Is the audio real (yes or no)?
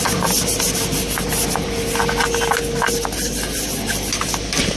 yes